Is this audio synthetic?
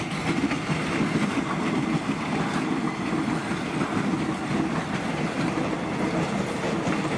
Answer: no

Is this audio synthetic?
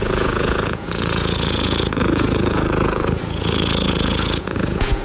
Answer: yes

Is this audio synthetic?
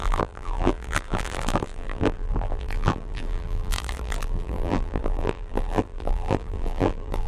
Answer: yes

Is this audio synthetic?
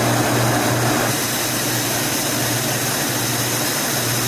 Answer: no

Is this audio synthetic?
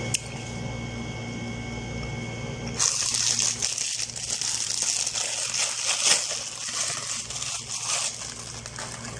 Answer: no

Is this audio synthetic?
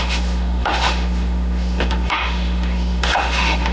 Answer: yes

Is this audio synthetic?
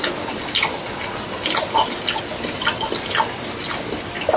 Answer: no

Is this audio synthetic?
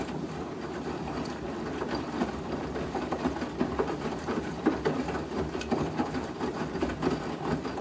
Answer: yes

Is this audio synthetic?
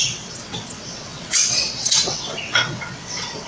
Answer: yes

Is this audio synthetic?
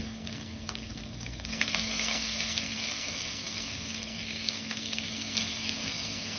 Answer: yes